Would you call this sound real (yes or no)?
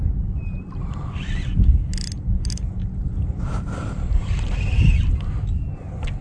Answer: yes